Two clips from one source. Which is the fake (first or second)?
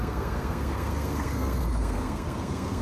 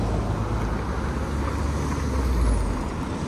first